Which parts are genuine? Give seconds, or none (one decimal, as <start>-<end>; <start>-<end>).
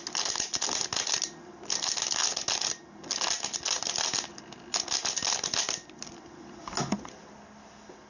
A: 0.0-8.1